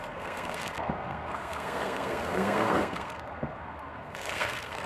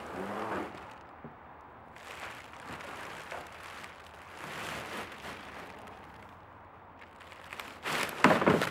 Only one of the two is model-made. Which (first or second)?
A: first